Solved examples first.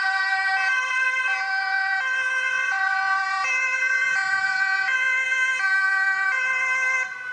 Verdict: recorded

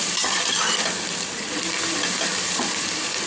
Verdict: remade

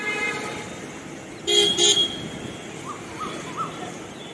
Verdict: recorded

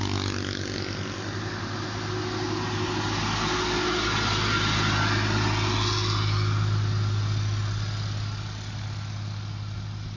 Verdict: recorded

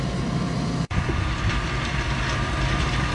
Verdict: remade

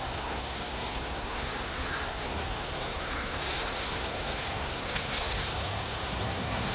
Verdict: remade